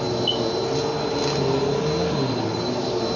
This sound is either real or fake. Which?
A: real